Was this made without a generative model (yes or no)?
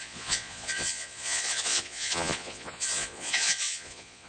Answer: no